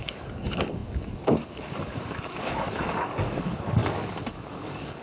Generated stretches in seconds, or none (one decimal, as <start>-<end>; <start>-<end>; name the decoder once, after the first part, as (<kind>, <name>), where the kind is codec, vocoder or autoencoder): 0.0-5.0 (codec, DAC)